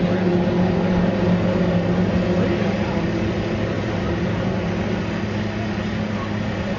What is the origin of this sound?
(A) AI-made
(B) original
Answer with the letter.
B